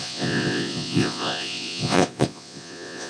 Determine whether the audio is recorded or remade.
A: remade